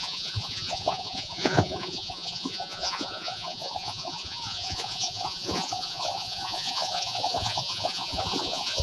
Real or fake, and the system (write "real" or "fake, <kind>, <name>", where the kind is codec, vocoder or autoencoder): fake, vocoder, Vocos